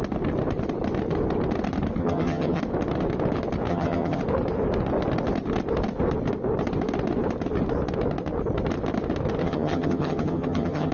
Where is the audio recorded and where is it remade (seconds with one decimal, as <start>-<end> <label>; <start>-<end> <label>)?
0.0-2.0 recorded; 2.0-2.6 remade; 2.6-3.7 recorded; 3.7-4.2 remade; 4.2-9.4 recorded; 9.4-10.9 remade